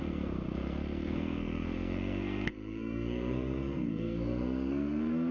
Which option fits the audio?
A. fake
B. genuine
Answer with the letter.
A